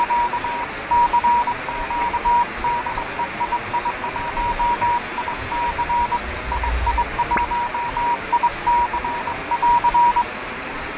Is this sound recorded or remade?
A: recorded